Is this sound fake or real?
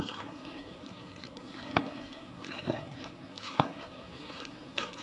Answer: fake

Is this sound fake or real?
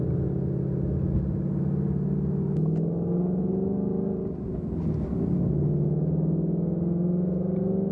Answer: real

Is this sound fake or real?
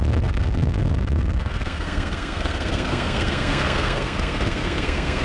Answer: fake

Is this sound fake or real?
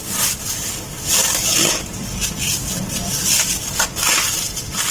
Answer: real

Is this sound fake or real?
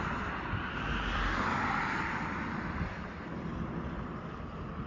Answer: real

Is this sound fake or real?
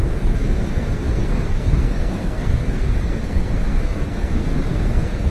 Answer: fake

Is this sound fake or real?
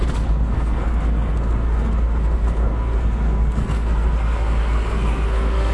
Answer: fake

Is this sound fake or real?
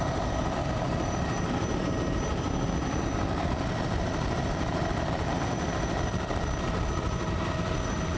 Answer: fake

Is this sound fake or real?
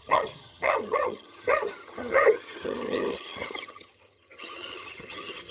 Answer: fake